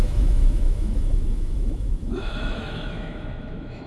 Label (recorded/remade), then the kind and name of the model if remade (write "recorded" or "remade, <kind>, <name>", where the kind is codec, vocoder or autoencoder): remade, autoencoder, DAC-VAE